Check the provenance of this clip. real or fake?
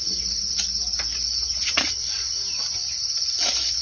real